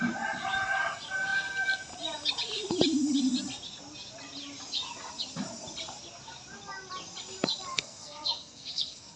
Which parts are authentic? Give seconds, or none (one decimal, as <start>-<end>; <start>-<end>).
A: 0.0-7.7